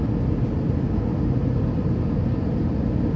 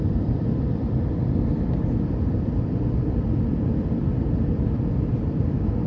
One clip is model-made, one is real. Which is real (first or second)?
first